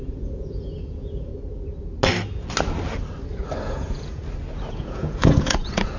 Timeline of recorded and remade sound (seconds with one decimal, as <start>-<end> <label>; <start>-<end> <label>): 0.0-1.3 remade; 1.3-3.6 recorded; 3.6-4.2 remade; 4.2-4.7 recorded; 4.7-6.0 remade